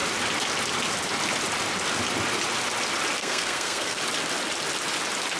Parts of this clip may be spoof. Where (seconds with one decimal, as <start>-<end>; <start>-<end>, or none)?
3.2-4.0